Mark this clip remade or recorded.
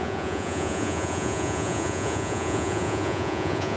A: remade